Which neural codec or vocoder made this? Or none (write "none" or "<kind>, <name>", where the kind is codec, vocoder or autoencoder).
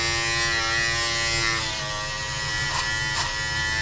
none